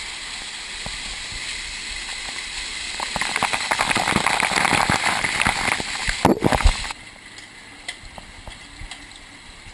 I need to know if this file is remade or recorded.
recorded